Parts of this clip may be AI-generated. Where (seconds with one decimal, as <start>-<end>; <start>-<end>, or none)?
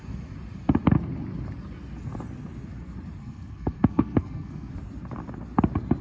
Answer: 3.2-4.7